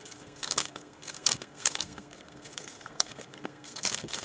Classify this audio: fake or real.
fake